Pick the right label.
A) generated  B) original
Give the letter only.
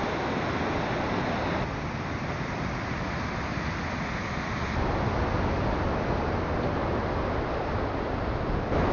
B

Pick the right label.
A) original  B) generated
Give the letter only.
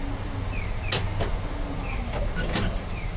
A